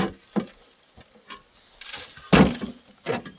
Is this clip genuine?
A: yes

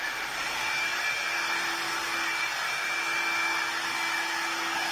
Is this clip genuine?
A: yes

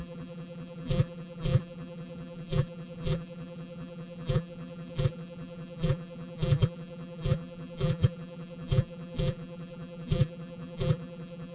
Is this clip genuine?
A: no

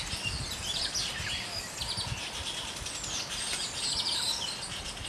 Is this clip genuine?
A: yes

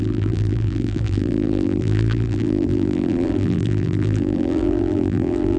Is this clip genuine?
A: no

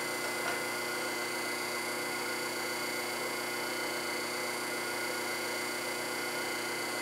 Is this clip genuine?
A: yes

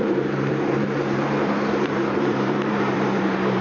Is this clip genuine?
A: no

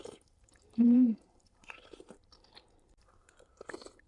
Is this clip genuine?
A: no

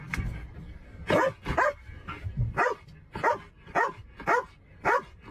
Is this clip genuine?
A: yes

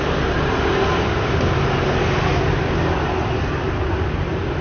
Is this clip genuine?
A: yes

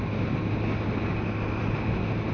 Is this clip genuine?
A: yes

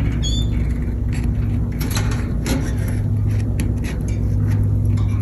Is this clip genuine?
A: yes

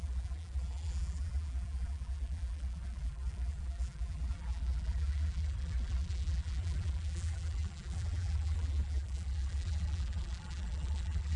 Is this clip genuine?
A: no